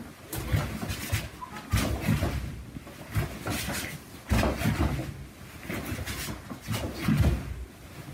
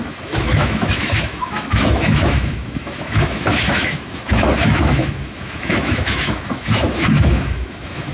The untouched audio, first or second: first